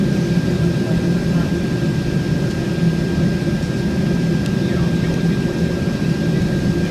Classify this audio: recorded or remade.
recorded